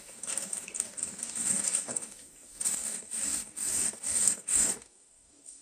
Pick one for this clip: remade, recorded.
remade